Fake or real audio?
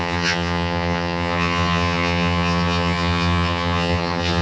fake